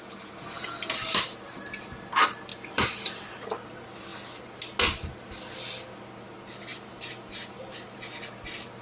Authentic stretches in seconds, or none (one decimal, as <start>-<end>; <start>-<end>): 0.0-2.5; 3.3-6.7; 8.0-8.8